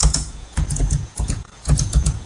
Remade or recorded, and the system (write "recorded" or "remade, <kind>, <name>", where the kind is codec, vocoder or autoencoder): remade, vocoder, Vocos